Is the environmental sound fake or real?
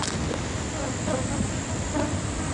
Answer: real